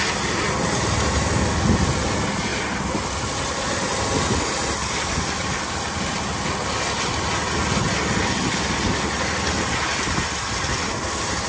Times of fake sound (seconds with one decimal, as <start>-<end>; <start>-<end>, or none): none